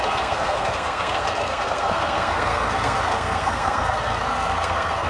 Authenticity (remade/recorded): remade